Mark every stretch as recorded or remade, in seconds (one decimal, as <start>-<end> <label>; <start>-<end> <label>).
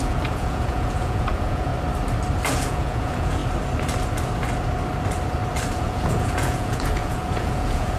0.0-1.7 remade; 1.7-2.5 recorded; 2.5-3.4 remade; 3.4-5.7 recorded; 5.7-8.0 remade